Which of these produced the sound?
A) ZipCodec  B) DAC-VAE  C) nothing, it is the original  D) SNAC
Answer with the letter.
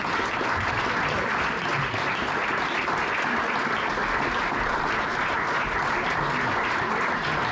C